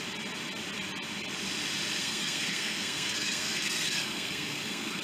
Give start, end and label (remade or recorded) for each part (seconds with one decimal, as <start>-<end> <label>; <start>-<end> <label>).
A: 0.0-2.0 recorded; 2.0-5.0 remade